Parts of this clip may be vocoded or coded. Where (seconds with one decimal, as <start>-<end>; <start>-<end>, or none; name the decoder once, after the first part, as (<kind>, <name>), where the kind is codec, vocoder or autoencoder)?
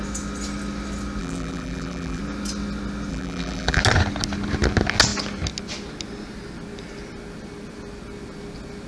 1.2-2.2 (vocoder, BigVGAN v2); 3.1-3.8